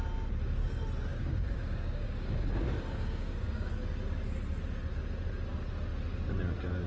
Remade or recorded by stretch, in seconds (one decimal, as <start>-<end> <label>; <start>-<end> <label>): 0.0-1.1 recorded; 1.1-3.7 remade; 3.7-6.9 recorded

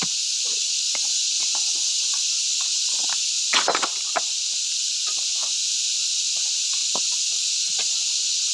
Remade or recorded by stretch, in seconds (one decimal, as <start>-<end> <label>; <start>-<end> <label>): 0.0-8.5 recorded